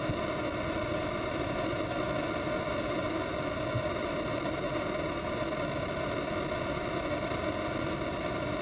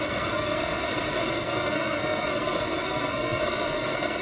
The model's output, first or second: second